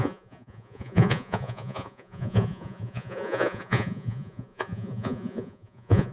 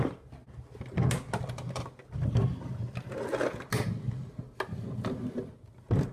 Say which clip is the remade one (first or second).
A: first